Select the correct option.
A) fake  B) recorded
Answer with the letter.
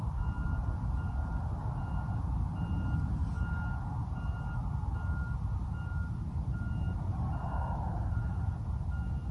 B